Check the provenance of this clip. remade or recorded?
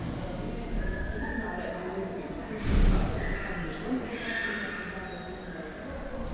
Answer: recorded